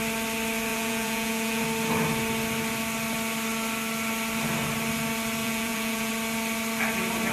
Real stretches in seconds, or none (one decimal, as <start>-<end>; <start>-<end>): 0.0-0.7; 1.6-5.4; 6.1-7.3